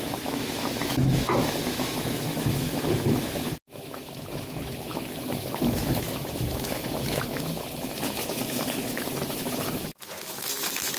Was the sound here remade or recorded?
remade